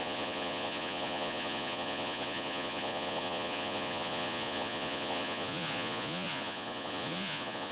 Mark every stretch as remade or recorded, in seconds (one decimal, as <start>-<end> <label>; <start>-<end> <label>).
0.0-7.7 remade